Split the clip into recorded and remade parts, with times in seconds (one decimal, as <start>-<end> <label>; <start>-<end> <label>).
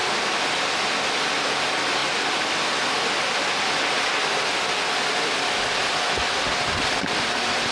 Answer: 0.0-7.7 recorded